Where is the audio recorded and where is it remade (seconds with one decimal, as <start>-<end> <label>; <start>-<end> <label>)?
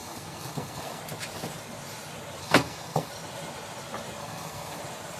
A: 0.0-1.0 remade; 1.0-2.4 recorded; 2.4-3.1 remade; 3.1-4.2 recorded; 4.2-4.8 remade; 4.8-5.2 recorded